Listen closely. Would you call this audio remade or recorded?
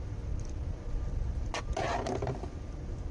recorded